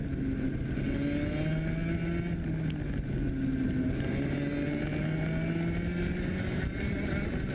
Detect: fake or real real